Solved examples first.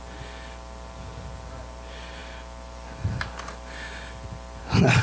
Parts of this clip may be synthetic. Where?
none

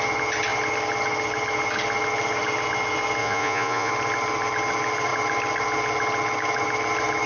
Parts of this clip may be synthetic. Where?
3.2-3.9 (vocoder, Vocos)

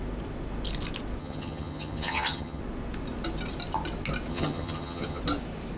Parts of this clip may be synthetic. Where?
1.2-2.6 (vocoder, HiFi-GAN); 4.3-5.2